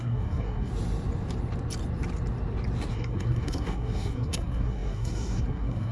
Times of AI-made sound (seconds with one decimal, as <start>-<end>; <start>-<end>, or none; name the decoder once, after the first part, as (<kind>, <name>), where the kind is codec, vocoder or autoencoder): 0.0-0.7 (codec, SNAC); 2.9-5.9